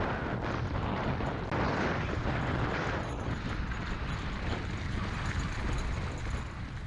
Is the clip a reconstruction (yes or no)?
no